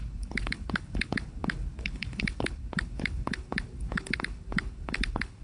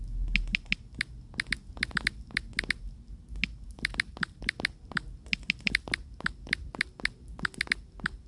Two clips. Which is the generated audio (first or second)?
first